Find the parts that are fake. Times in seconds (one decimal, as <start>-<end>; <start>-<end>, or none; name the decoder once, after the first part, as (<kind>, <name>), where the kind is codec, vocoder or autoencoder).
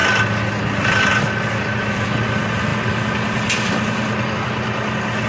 none